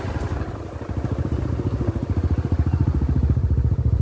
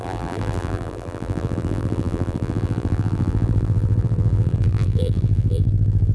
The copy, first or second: second